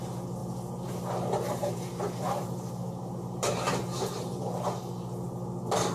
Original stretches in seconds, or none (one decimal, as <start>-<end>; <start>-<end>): 0.0-1.6; 4.4-5.9